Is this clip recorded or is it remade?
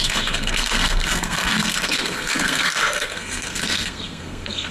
remade